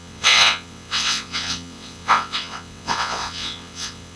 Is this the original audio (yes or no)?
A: no